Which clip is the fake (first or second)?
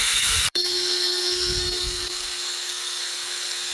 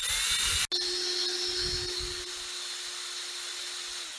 first